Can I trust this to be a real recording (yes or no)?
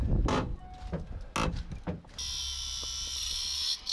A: yes